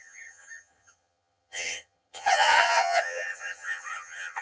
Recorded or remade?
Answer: remade